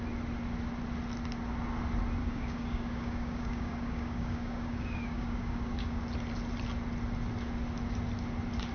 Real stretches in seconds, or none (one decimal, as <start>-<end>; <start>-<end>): 0.0-2.2; 6.0-8.7